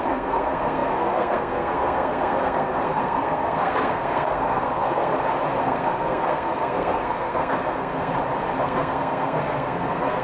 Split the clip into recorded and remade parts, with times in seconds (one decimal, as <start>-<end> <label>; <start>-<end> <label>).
0.0-5.1 remade; 5.1-5.6 recorded; 5.6-8.1 remade; 8.1-8.6 recorded; 8.6-10.2 remade

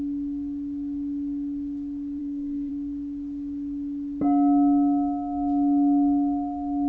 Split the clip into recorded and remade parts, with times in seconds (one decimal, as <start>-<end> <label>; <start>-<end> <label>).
0.0-2.2 recorded; 2.2-2.7 remade; 2.7-6.9 recorded